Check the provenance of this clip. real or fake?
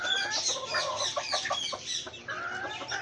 real